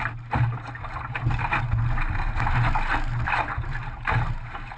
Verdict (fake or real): real